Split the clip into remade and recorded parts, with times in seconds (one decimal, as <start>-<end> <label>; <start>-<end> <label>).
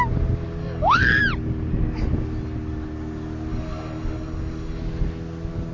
0.0-0.6 recorded; 0.6-1.2 remade; 1.2-3.5 recorded; 3.5-4.8 remade; 4.8-5.7 recorded